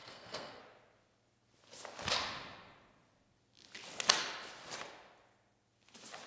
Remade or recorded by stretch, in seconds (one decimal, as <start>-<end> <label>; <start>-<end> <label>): 0.0-0.6 remade; 0.6-6.3 recorded